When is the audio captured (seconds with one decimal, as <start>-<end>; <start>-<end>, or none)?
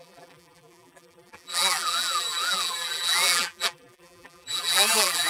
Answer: none